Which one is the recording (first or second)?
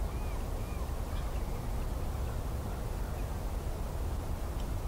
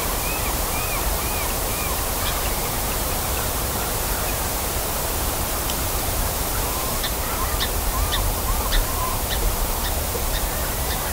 first